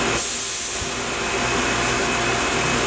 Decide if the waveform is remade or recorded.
recorded